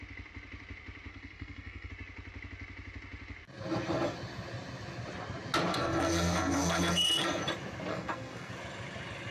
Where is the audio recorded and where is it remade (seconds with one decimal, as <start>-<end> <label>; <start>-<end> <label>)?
0.0-1.1 recorded; 1.1-1.9 remade; 1.9-5.7 recorded; 5.7-7.4 remade; 7.4-7.9 recorded; 7.9-8.5 remade; 8.5-9.3 recorded